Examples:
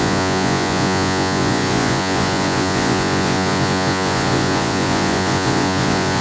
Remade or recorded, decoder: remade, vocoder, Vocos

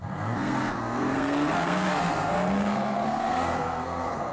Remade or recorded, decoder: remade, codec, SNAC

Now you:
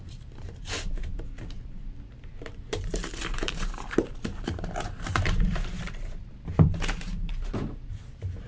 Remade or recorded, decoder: remade, vocoder, BigVGAN v2